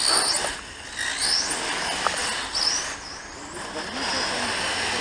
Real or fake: real